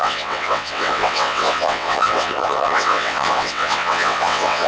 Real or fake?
fake